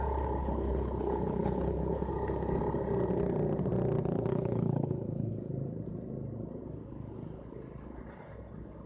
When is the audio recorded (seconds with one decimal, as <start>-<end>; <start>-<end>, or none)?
0.0-0.4; 2.1-4.3; 5.5-8.9